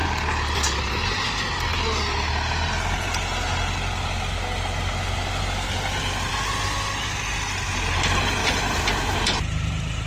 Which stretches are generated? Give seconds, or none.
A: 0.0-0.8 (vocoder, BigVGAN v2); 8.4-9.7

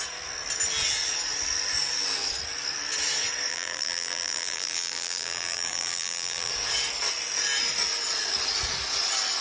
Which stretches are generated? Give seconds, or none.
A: 3.5-6.5 (vocoder, BigVGAN v2)

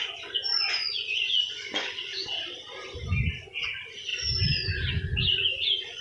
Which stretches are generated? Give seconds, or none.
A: 0.0-2.1 (vocoder, Vocos); 3.4-6.0

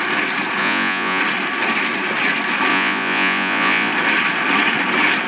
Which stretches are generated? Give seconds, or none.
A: 0.6-1.2 (vocoder, Vocos); 2.7-3.9

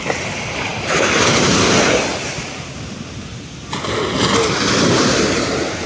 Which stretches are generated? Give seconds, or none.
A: 0.0-3.3 (vocoder, BigVGAN v2); 4.7-5.9

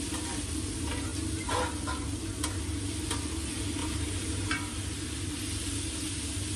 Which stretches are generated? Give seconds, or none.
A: 3.8-4.8 (vocoder, BigVGAN v2)

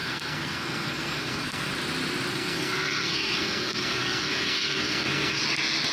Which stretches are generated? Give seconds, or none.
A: 0.0-1.7 (codec, SNAC); 2.3-5.4

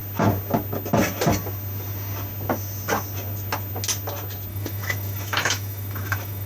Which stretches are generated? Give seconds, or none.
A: 4.5-6.5 (autoencoder, DAC-VAE)